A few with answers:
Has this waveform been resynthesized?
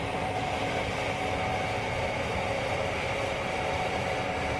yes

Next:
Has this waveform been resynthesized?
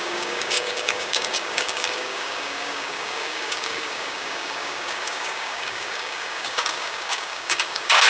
yes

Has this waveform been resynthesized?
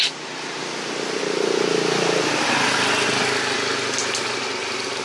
no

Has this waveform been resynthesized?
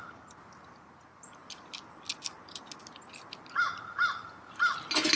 no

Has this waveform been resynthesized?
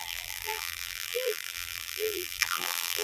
yes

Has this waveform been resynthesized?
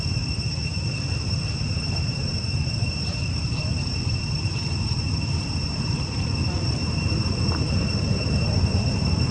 yes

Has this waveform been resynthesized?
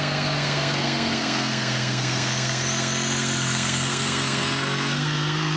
yes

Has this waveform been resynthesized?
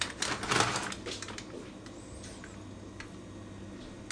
no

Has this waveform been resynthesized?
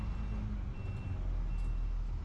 no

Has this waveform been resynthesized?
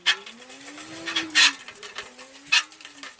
no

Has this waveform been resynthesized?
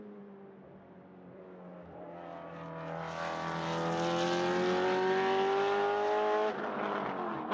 no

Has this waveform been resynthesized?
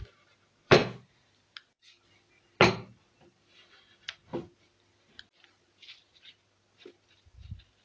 no